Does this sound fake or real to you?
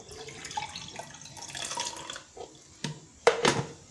real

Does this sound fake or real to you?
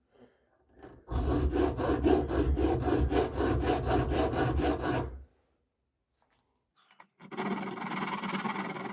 real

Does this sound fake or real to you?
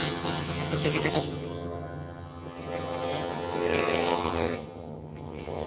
fake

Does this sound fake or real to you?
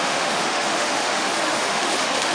fake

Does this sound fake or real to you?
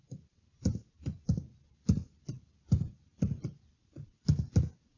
real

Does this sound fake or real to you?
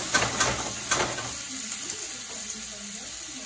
real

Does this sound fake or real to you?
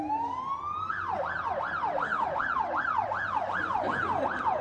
real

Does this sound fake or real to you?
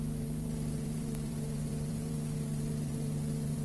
fake